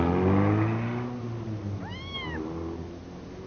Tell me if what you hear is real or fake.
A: real